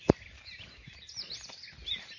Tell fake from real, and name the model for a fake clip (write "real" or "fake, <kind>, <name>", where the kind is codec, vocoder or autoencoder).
real